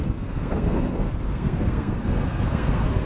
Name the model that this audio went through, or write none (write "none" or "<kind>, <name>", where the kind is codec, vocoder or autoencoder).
codec, SNAC